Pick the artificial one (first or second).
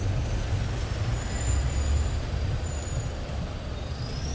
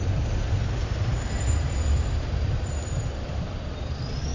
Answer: second